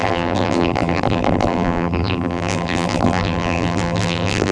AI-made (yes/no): yes